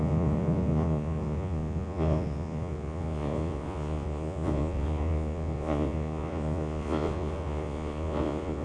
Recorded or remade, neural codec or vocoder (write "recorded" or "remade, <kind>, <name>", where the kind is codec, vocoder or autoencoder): remade, vocoder, Vocos